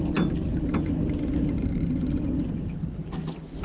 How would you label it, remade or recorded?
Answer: recorded